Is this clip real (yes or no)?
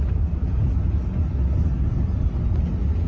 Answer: yes